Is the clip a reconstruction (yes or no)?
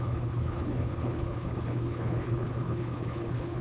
yes